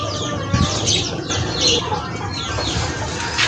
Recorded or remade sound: recorded